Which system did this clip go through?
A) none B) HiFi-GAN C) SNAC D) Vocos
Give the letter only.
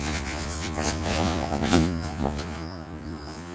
D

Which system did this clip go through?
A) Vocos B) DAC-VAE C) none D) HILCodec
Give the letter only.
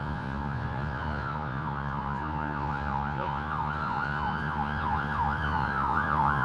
A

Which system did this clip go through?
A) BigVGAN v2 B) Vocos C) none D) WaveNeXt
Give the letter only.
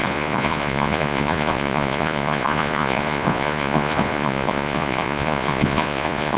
B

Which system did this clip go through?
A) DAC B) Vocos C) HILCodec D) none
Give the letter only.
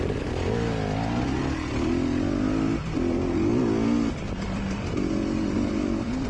D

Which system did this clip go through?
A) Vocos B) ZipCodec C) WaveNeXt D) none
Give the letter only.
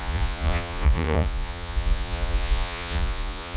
A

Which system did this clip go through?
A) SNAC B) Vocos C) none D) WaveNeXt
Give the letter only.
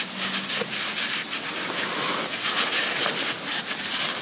C